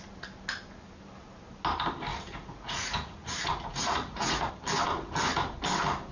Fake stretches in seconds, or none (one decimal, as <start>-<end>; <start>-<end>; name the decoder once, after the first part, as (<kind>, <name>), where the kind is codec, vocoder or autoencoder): 2.1-4.5 (vocoder, Vocos)